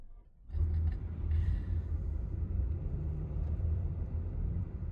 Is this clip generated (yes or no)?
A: yes